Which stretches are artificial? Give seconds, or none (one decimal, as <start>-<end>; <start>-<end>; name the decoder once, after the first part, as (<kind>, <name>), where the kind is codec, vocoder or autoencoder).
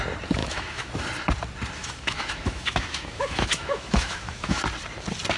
0.4-0.9 (autoencoder, DAC-VAE); 1.8-4.6